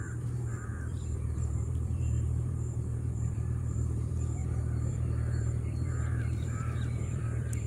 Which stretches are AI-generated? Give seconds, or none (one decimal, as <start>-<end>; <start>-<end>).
0.0-4.4; 4.9-7.7